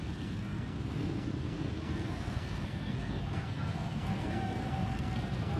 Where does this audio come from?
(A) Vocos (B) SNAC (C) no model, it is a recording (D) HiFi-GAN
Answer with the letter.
B